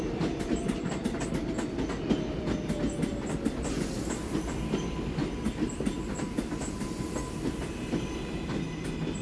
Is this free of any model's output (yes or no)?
yes